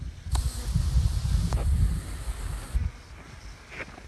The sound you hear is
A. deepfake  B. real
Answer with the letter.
B